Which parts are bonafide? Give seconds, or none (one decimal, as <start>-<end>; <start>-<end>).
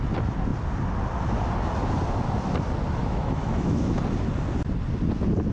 0.0-3.0; 4.0-5.5